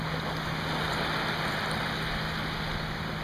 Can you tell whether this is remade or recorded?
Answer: recorded